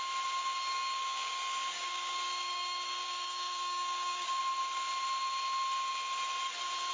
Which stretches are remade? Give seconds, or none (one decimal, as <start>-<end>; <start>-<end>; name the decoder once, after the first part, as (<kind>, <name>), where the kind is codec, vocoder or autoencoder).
0.4-4.4 (codec, DAC)